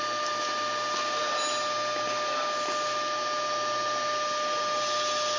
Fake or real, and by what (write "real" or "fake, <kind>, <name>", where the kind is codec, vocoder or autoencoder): real